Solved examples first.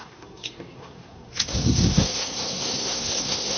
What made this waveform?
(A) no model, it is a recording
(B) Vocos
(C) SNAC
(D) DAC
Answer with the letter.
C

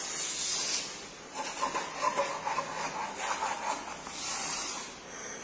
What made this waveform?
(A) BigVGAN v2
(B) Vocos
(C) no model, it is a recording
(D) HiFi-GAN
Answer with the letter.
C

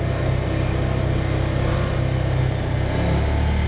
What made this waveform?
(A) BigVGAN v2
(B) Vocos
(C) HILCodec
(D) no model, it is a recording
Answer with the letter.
D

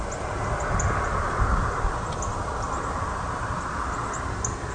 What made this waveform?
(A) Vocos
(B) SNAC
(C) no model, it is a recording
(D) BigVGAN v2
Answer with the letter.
C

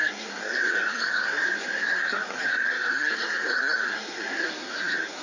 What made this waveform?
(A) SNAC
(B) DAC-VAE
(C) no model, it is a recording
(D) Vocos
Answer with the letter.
A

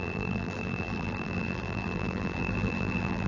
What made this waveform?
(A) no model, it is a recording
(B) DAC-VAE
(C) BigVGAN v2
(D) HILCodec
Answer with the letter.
C